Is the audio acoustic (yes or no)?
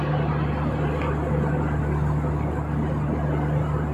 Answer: yes